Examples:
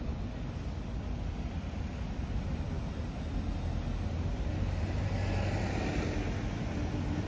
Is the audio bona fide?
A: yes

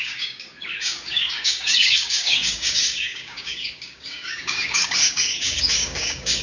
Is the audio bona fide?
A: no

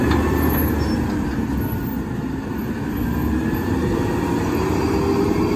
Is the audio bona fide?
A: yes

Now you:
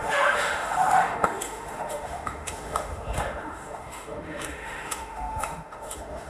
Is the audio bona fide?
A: no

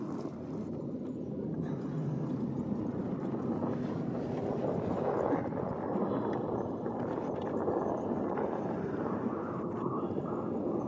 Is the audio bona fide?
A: yes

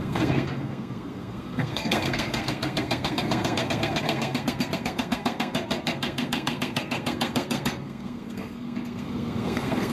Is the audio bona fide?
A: no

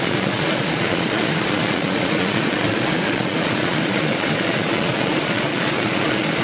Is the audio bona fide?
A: no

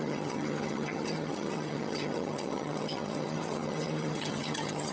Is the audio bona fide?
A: no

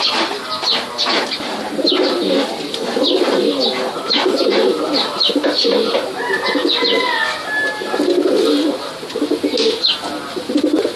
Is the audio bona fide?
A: yes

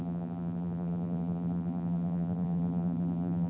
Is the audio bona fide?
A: no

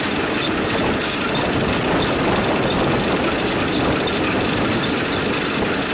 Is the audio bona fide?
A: yes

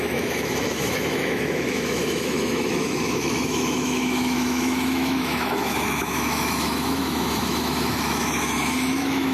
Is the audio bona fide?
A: no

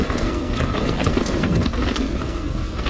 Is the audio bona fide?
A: no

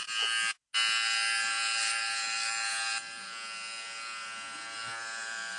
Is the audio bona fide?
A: yes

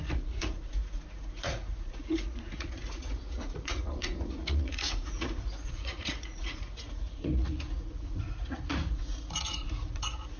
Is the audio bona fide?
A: no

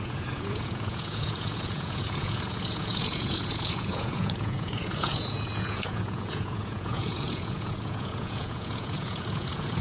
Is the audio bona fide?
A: no